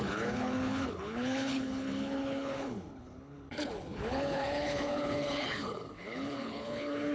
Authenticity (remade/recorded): remade